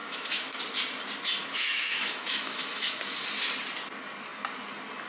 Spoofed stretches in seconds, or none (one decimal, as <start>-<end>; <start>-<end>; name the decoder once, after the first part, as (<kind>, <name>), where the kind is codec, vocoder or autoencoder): 0.0-0.6 (autoencoder, DAC-VAE); 1.4-3.0